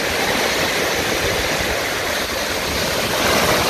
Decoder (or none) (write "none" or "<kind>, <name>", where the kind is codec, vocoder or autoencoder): none